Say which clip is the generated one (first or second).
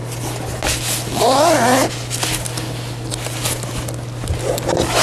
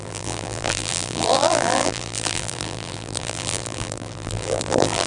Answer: second